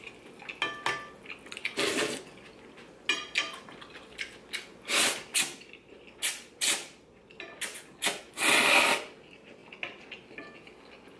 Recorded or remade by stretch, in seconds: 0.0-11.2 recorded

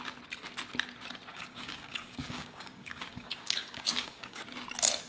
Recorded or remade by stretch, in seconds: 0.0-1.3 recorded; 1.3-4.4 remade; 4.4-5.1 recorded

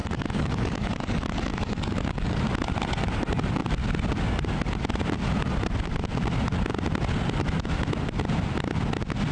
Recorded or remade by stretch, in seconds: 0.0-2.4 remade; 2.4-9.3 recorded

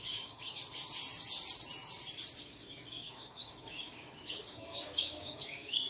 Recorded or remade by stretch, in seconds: 0.0-0.6 remade; 0.6-2.4 recorded; 2.4-5.9 remade

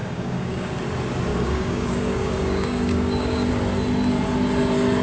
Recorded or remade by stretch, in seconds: 0.0-0.7 remade; 0.7-1.3 recorded; 1.3-3.5 remade; 3.5-5.0 recorded